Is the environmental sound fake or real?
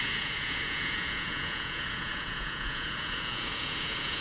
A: fake